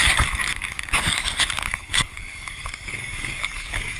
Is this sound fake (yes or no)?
yes